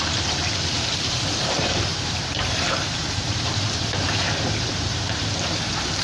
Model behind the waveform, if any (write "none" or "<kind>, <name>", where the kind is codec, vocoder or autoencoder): vocoder, BigVGAN v2